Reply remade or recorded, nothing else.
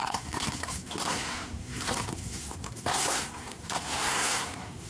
remade